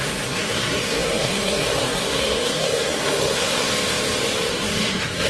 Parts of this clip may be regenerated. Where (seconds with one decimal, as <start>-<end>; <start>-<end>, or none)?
0.0-3.7; 4.5-5.3